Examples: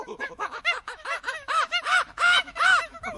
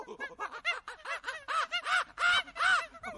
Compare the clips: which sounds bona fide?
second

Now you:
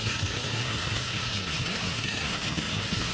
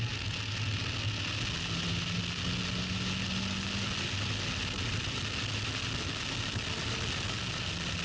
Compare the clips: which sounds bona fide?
second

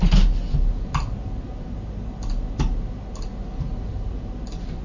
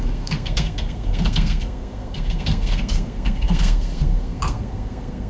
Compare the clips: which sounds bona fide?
first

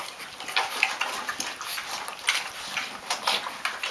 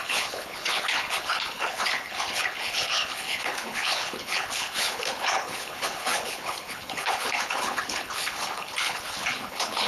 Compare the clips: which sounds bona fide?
first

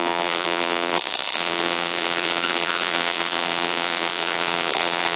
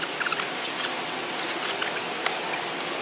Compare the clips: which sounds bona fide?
second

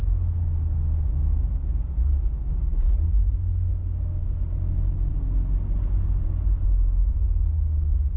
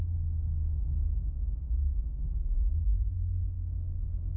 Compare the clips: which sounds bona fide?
first